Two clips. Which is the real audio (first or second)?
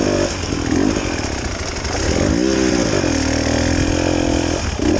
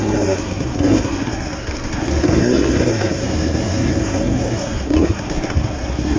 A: first